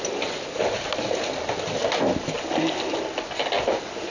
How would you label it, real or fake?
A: real